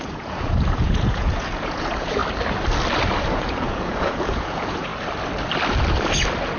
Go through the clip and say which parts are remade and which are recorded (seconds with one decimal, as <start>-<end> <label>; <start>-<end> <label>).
0.0-2.2 remade; 2.2-3.2 recorded; 3.2-4.9 remade; 4.9-6.6 recorded